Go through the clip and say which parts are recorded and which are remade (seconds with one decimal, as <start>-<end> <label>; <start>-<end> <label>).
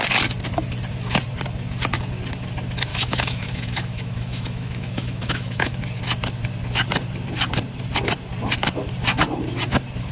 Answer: 0.0-2.9 recorded; 2.9-5.8 remade; 5.8-10.1 recorded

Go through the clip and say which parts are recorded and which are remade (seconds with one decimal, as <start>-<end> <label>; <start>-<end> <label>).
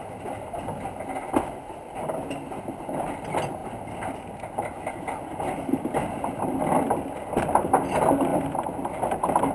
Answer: 0.0-9.5 recorded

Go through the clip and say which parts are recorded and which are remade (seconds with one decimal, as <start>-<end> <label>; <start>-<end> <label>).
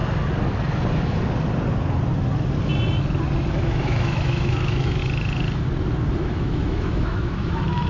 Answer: 0.0-3.5 recorded; 3.5-5.0 remade; 5.0-6.2 recorded; 6.2-7.9 remade